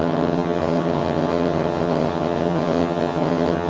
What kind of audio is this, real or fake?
fake